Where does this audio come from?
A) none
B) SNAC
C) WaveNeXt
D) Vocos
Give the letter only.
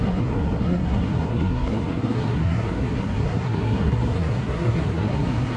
B